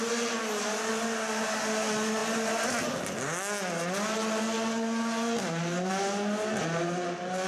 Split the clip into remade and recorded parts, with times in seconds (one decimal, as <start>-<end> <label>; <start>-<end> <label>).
0.0-7.5 recorded